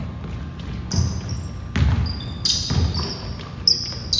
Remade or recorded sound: recorded